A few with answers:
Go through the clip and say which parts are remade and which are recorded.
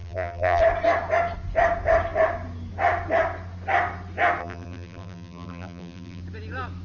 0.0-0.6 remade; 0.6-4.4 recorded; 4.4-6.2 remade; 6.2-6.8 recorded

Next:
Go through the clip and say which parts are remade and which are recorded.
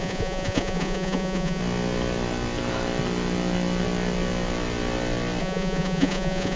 0.0-1.6 remade; 1.6-5.4 recorded; 5.4-6.6 remade